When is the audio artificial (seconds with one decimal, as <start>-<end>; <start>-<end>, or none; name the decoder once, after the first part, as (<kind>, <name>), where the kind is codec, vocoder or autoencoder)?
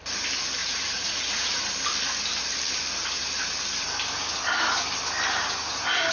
0.6-1.6 (vocoder, Vocos)